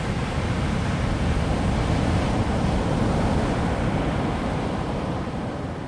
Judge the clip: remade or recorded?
recorded